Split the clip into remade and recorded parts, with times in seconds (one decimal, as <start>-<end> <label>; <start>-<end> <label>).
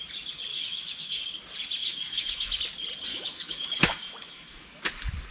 0.0-0.5 recorded; 0.5-1.2 remade; 1.2-1.8 recorded; 1.8-2.6 remade; 2.6-3.1 recorded; 3.1-4.8 remade; 4.8-5.3 recorded